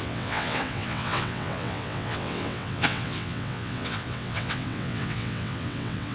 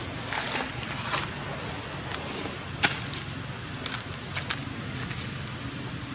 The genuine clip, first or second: second